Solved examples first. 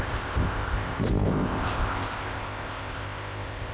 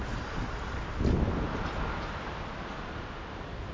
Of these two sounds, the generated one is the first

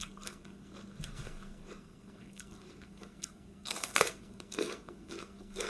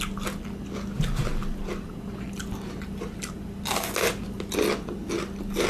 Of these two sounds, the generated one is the first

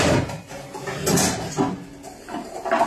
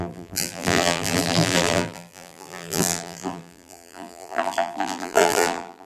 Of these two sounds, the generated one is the second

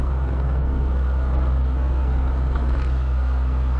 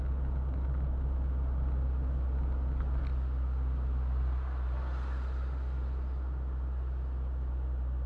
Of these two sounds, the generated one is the first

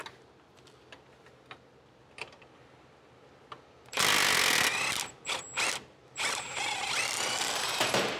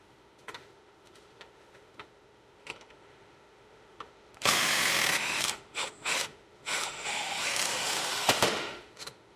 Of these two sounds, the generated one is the second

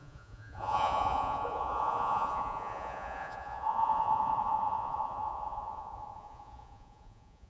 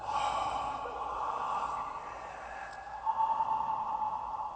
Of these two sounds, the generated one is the first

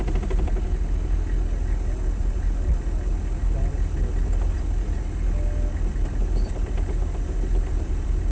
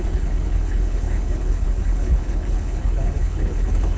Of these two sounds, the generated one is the second